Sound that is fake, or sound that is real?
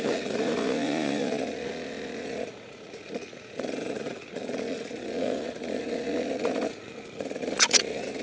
fake